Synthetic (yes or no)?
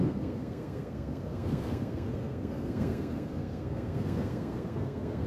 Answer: yes